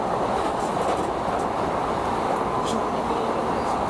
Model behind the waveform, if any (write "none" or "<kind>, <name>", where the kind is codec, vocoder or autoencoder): none